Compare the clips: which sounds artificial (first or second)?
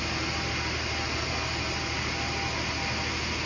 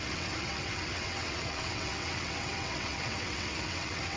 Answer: second